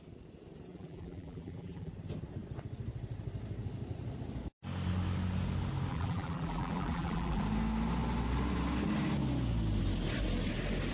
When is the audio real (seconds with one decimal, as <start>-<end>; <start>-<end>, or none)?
0.0-0.7; 1.9-5.9; 7.4-10.9